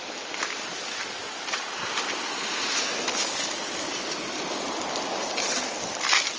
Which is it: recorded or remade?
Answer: recorded